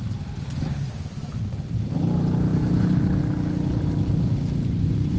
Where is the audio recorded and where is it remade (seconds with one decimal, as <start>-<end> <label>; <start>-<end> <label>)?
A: 0.0-5.2 recorded